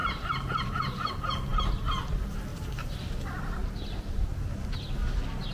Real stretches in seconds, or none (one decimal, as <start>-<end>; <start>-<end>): 1.1-2.5; 3.2-3.6; 4.2-5.5